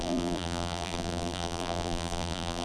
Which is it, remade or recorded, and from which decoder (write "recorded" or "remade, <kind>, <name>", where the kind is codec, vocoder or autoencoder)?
remade, vocoder, BigVGAN v2